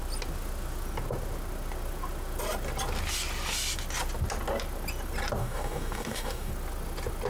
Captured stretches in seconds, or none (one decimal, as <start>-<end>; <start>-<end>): 0.0-5.4; 6.5-7.3